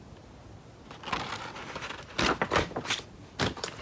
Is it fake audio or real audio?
real